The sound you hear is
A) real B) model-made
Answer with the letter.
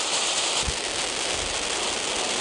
A